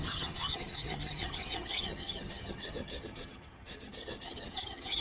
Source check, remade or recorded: remade